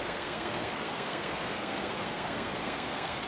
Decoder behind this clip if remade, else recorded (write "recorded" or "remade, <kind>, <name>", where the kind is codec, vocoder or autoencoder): remade, codec, SNAC